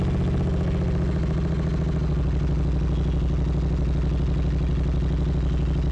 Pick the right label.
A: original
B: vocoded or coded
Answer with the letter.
A